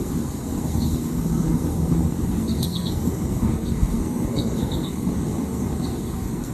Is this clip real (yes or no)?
no